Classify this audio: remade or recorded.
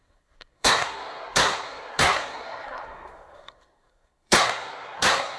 remade